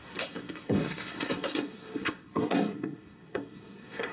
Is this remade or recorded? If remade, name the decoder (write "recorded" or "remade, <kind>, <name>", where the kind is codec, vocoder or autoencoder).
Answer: remade, codec, SNAC